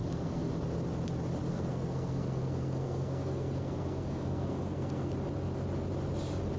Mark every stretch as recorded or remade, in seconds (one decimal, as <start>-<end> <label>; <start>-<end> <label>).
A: 0.0-0.5 remade; 0.5-1.5 recorded; 1.5-5.1 remade; 5.1-6.6 recorded